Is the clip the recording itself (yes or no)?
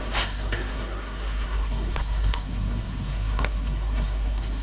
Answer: no